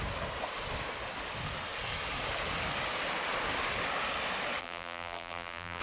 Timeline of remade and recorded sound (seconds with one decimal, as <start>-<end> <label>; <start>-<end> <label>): 0.0-4.6 recorded; 4.6-5.8 remade